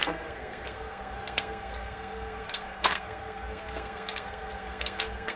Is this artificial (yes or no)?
yes